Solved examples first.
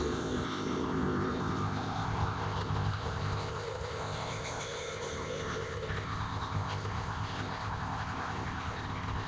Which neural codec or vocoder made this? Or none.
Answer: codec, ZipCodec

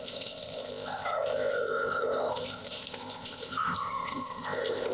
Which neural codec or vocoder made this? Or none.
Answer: codec, ZipCodec